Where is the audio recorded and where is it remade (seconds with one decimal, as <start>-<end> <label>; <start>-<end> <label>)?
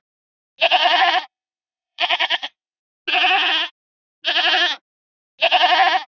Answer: 0.0-0.8 recorded; 0.8-2.8 remade; 2.8-6.2 recorded